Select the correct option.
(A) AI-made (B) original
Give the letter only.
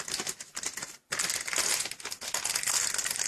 B